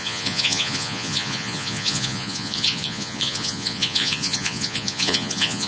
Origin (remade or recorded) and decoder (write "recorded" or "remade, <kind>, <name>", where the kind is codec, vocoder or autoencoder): remade, vocoder, Vocos